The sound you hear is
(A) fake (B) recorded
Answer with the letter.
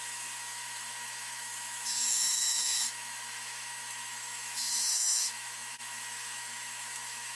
A